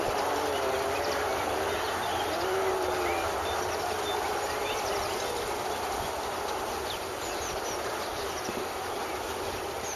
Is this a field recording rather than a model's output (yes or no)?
no